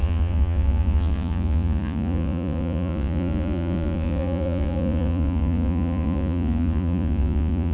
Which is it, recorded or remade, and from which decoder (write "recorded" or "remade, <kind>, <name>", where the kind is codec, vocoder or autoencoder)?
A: remade, vocoder, Vocos